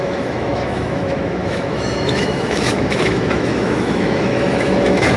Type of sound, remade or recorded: remade